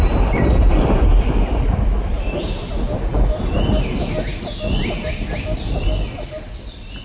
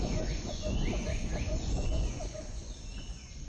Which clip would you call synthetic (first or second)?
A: second